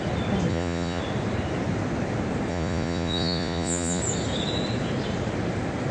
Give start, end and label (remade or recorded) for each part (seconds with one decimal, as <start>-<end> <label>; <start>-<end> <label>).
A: 0.0-0.5 recorded; 0.5-1.0 remade; 1.0-2.5 recorded; 2.5-4.0 remade; 4.0-5.9 recorded